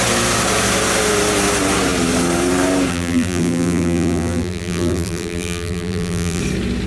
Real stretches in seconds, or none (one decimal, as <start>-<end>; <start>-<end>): 0.0-2.9; 6.4-6.9